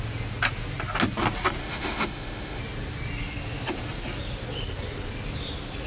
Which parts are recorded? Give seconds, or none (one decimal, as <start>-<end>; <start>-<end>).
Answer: 0.0-1.6; 2.6-5.9